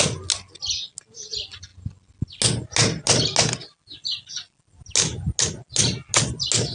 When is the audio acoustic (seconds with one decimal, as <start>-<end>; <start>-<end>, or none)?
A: 0.0-6.7